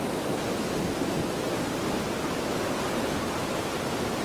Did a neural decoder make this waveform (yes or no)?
no